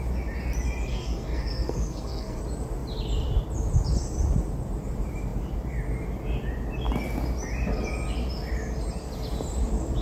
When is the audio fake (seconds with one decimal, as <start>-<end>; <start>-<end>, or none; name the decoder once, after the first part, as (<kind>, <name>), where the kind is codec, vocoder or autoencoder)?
0.9-2.4 (codec, SNAC)